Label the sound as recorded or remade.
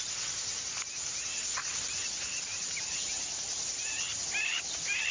recorded